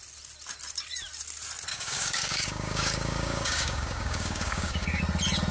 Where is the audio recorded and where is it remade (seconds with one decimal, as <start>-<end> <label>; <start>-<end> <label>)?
0.0-1.7 recorded; 1.7-5.0 remade; 5.0-5.5 recorded